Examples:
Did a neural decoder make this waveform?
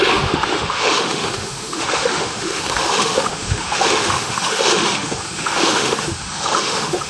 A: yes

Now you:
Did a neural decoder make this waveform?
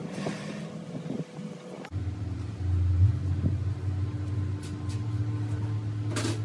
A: no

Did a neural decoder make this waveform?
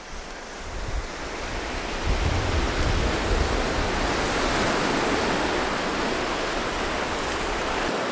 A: no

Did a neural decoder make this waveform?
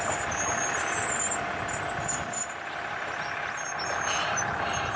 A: no